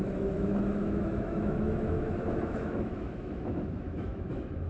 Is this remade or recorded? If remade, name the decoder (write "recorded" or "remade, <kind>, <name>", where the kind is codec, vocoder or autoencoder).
remade, autoencoder, DAC-VAE